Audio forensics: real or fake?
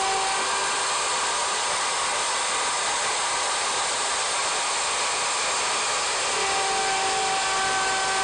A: real